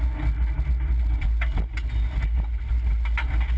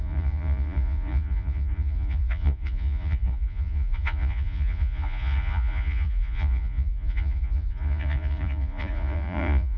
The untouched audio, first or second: first